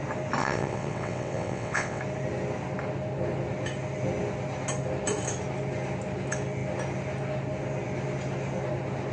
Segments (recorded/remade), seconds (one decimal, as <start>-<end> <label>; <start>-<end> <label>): 0.0-0.4 recorded; 0.4-2.0 remade; 2.0-9.1 recorded